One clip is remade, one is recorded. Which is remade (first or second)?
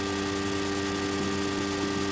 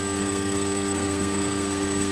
second